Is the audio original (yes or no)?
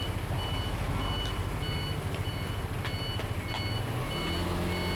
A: yes